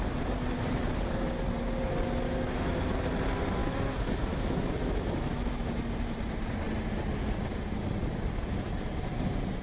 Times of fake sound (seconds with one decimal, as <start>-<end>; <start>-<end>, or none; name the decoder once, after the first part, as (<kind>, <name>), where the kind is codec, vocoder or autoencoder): 3.6-5.6 (autoencoder, DAC-VAE)